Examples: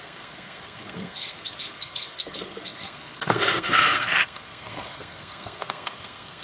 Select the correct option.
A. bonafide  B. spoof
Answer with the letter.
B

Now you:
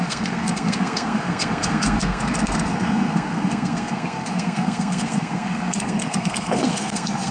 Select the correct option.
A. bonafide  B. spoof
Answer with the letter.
B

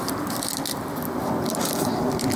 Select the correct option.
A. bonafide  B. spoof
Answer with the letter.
A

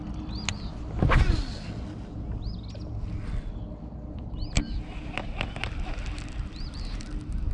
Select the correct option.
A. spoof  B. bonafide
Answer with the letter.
B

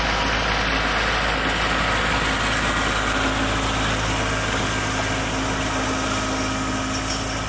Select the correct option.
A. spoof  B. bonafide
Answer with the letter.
B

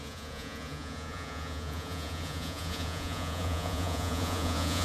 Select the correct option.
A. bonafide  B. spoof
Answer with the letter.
B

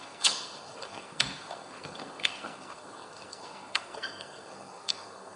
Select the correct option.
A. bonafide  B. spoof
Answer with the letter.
B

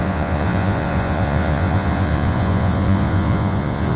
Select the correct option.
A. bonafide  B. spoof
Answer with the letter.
B